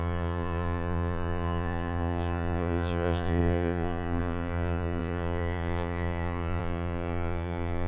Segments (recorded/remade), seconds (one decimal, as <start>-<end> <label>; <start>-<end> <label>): 0.0-7.9 remade